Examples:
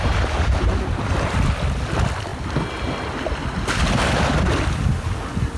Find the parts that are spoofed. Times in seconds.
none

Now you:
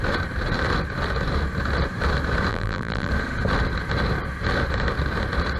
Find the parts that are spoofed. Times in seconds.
2.5-3.1

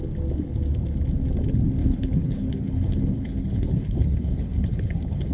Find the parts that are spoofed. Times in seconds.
1.8-5.3

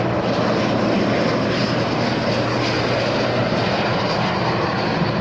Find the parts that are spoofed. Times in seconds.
none

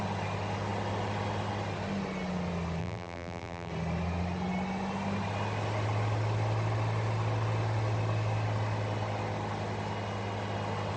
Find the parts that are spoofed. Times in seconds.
2.8-3.7